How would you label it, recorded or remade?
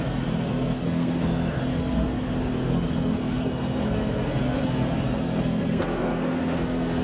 remade